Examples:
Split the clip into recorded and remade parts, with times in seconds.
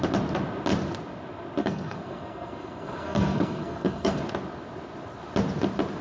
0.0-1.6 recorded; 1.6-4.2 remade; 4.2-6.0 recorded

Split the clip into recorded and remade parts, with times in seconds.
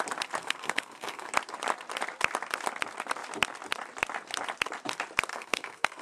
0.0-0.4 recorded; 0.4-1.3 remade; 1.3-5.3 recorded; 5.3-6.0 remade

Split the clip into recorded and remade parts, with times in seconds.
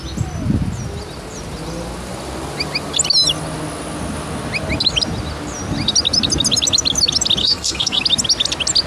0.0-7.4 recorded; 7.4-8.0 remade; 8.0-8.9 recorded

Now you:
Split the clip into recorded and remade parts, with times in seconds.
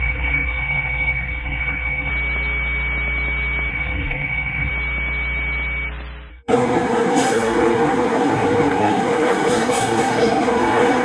0.0-2.1 remade; 2.1-3.7 recorded; 3.7-4.7 remade; 4.7-6.3 recorded; 6.3-11.0 remade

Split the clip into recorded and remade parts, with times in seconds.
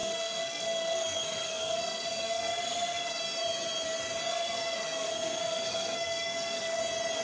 0.0-3.2 remade; 3.2-4.3 recorded; 4.3-6.8 remade; 6.8-7.2 recorded